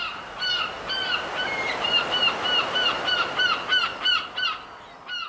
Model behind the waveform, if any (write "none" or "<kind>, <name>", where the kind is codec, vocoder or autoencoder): none